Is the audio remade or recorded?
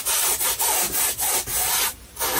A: recorded